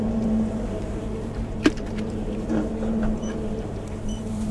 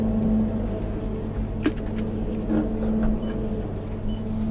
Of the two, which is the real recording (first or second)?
second